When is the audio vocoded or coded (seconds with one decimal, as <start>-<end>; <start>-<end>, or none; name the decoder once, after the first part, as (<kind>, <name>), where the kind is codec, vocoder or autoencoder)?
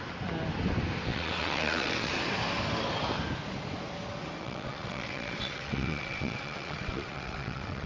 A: 1.1-2.1 (vocoder, WaveNeXt); 4.4-7.9